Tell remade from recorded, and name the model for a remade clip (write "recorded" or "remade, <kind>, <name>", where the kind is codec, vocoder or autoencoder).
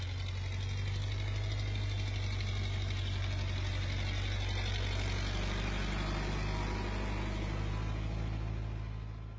recorded